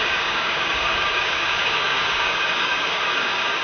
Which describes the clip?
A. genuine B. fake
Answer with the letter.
B